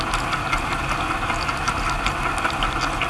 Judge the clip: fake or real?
real